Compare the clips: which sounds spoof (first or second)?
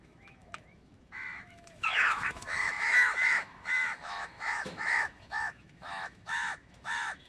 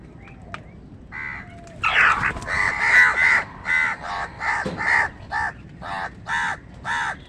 first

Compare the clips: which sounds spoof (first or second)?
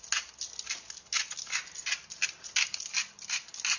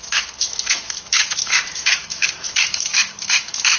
second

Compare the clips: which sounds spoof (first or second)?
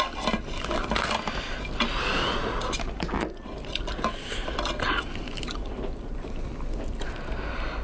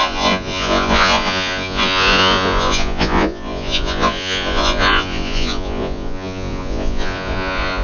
second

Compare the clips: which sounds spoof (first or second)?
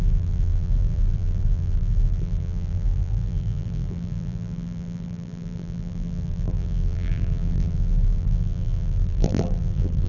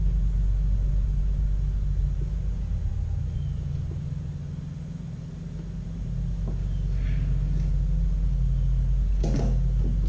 first